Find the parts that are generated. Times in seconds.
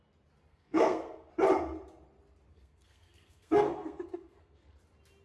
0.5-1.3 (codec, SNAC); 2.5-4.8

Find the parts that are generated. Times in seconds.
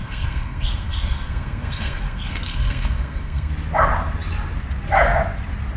0.0-3.5 (codec, SNAC)